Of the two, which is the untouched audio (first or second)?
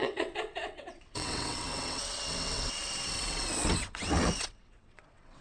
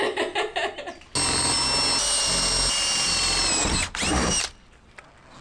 second